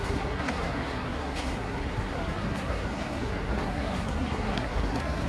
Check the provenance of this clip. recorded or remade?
remade